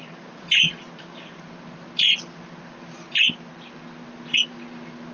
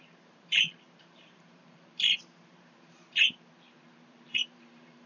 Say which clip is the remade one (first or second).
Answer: second